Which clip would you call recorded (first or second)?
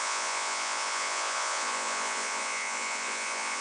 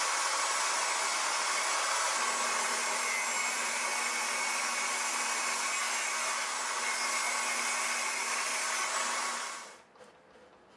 second